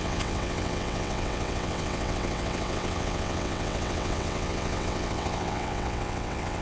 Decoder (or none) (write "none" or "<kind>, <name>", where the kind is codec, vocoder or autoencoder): vocoder, WaveNeXt